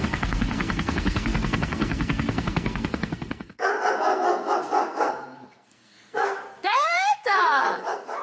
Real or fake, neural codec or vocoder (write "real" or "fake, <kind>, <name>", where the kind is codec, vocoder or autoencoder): fake, codec, SNAC